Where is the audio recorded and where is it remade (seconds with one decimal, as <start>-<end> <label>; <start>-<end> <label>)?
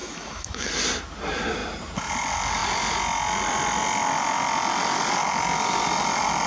0.0-0.7 remade; 0.7-6.5 recorded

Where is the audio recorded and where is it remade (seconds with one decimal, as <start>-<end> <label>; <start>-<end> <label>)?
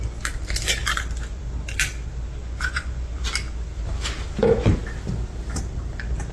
0.0-2.4 recorded; 2.4-3.1 remade; 3.1-6.3 recorded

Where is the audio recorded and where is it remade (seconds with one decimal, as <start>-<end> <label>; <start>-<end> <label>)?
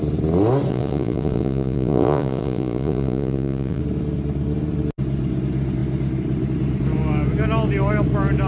0.0-0.7 recorded; 0.7-3.8 remade; 3.8-8.5 recorded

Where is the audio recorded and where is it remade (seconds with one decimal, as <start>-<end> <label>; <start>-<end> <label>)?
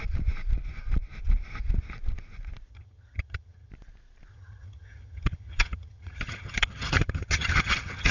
0.0-2.7 recorded; 2.7-3.7 remade; 3.7-4.3 recorded; 4.3-8.1 remade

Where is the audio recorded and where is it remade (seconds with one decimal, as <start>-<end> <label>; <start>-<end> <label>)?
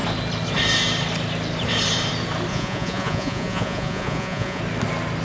0.0-2.5 recorded; 2.5-4.6 remade; 4.6-5.2 recorded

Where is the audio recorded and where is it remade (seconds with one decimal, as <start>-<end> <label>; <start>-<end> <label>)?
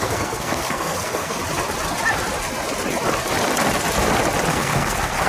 0.0-1.4 remade; 1.4-4.5 recorded; 4.5-5.3 remade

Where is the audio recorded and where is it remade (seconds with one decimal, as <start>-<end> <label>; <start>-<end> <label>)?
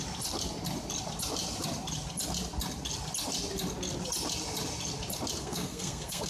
0.0-5.4 recorded; 5.4-6.3 remade